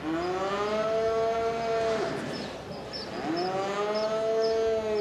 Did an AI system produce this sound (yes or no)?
no